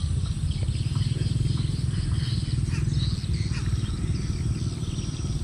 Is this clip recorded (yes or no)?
yes